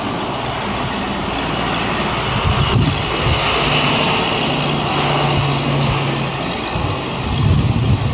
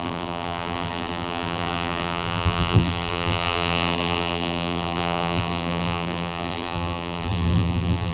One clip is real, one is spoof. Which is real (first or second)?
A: first